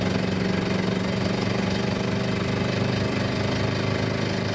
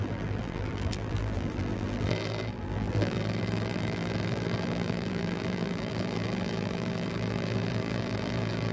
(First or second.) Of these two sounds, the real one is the first